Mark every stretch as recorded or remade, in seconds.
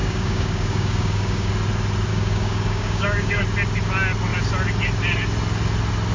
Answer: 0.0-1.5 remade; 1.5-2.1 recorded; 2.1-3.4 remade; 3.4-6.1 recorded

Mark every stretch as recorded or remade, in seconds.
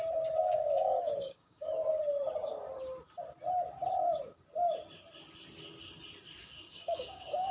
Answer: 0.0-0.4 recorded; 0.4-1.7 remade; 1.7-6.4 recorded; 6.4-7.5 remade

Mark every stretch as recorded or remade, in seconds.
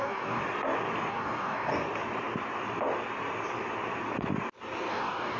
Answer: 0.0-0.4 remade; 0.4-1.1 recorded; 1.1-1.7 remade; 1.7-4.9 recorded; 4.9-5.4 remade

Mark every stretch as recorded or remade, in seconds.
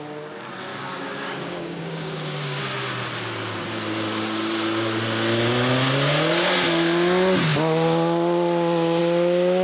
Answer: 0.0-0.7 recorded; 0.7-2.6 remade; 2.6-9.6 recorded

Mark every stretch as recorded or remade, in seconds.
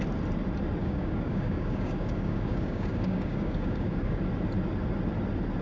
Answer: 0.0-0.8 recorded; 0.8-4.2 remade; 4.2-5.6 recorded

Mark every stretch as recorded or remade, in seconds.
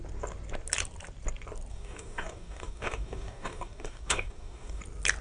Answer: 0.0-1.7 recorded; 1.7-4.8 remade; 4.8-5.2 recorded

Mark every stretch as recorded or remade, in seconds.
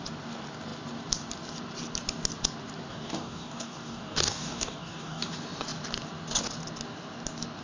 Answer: 0.0-2.9 recorded; 2.9-5.3 remade; 5.3-7.6 recorded